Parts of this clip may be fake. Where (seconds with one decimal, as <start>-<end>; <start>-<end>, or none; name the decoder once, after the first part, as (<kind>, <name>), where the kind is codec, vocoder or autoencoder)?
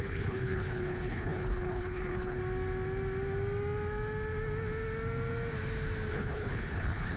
0.0-2.4 (codec, HILCodec); 6.1-7.2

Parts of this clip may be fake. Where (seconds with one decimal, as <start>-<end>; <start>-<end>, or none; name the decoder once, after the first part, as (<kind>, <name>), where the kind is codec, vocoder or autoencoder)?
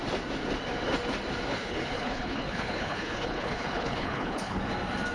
1.5-4.6 (codec, HILCodec)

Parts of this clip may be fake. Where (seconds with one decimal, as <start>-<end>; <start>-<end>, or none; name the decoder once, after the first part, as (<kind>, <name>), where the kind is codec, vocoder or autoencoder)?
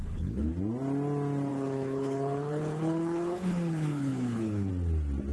0.0-0.5 (codec, HILCodec); 1.5-4.7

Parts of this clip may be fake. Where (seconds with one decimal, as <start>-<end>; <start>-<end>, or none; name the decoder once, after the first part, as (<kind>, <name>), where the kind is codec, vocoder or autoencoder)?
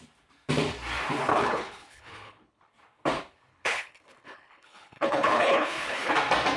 1.3-2.7 (codec, HILCodec); 3.5-6.1